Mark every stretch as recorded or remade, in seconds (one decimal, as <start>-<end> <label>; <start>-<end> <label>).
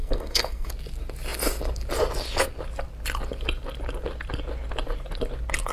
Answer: 0.0-0.7 remade; 0.7-5.7 recorded